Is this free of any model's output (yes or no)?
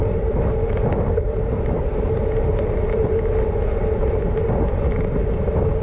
yes